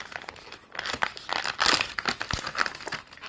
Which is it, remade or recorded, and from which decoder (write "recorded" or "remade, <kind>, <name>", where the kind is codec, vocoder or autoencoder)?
recorded